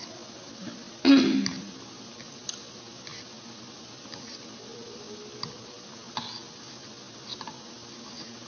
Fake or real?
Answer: real